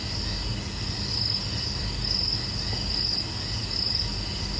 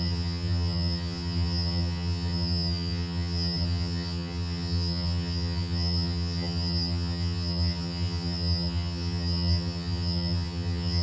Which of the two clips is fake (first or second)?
second